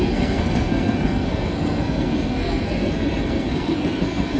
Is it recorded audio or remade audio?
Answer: remade